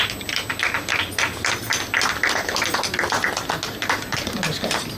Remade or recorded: recorded